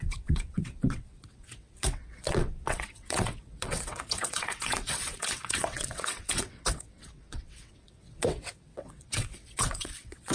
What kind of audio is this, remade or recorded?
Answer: remade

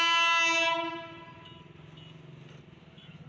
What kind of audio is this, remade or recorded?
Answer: recorded